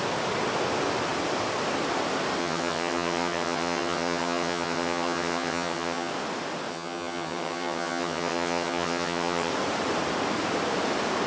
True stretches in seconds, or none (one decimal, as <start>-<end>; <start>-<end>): 0.0-2.4; 6.1-6.7; 9.5-11.3